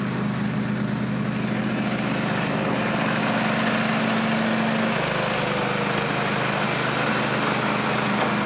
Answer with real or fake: real